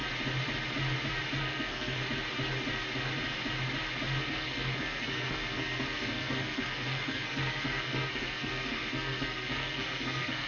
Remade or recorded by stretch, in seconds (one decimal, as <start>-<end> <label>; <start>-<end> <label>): 0.0-1.4 recorded; 1.4-2.0 remade; 2.0-4.2 recorded; 4.2-10.5 remade